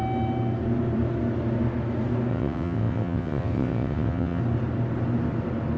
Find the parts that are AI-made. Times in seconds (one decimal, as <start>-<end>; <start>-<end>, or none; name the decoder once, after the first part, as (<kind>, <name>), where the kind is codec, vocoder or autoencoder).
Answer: 2.3-4.4 (vocoder, WaveNeXt)